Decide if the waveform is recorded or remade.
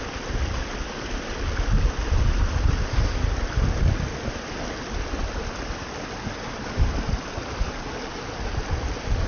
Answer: recorded